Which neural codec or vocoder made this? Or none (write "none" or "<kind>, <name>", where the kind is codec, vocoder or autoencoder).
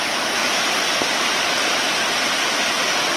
none